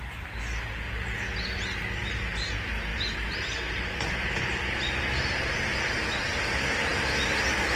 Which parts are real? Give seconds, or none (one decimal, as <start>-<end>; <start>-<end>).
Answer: 0.0-7.8